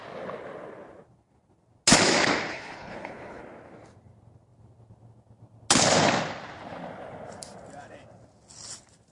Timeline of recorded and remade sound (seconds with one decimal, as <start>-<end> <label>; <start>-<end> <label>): 0.0-2.5 recorded; 2.5-3.4 remade; 3.4-9.1 recorded